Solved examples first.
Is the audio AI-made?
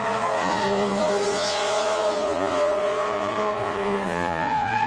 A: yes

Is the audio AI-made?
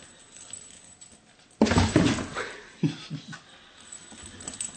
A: no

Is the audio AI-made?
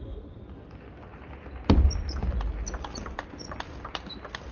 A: no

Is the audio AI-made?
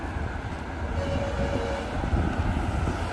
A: no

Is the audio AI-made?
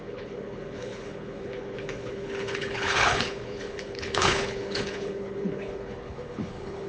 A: yes